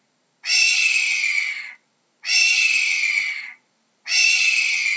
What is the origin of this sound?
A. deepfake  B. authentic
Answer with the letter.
B